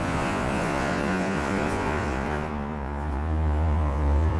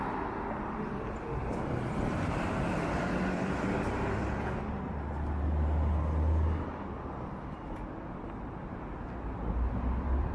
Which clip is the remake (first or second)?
first